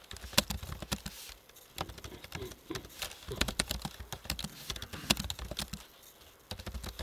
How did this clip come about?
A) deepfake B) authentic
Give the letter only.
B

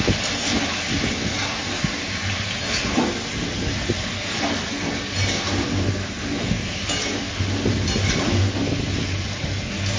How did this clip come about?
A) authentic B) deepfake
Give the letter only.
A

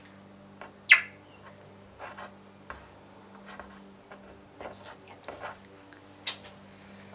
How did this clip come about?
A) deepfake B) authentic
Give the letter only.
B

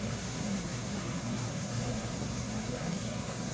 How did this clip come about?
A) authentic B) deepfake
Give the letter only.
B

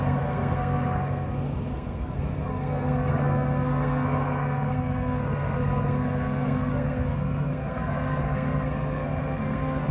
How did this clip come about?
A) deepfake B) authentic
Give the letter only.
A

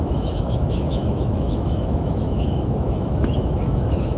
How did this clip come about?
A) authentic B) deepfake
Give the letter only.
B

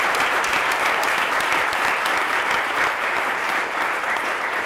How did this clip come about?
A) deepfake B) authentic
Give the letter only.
A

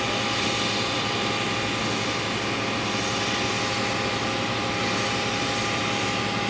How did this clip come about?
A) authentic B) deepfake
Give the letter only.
A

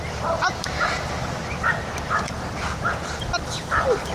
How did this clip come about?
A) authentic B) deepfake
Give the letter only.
A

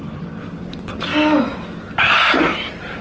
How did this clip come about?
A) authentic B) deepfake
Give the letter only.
A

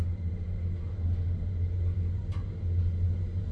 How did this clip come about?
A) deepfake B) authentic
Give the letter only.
B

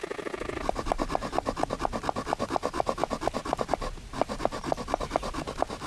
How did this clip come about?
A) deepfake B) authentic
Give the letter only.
B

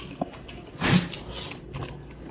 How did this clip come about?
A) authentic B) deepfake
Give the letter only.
A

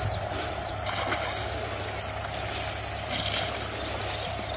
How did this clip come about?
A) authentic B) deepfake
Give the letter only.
A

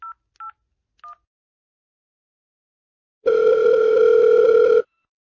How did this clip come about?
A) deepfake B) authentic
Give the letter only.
B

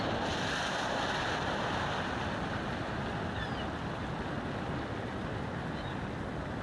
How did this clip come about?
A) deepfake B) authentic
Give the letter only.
B